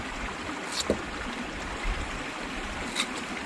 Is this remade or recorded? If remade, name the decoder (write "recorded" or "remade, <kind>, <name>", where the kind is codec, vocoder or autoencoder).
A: recorded